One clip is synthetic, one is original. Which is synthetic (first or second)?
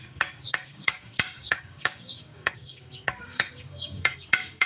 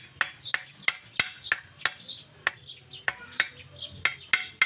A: first